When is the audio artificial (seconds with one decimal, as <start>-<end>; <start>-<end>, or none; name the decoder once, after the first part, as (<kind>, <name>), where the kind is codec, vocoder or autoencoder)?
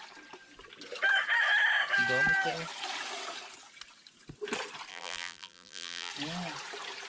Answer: 4.9-6.1 (vocoder, BigVGAN v2)